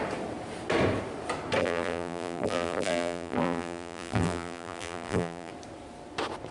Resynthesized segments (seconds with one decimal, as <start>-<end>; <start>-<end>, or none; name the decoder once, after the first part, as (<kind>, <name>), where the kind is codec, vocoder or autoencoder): 1.6-5.5 (vocoder, BigVGAN v2)